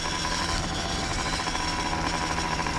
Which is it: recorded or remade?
remade